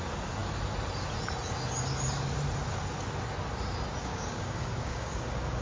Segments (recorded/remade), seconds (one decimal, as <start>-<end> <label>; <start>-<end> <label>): 0.0-4.0 recorded; 4.0-5.6 remade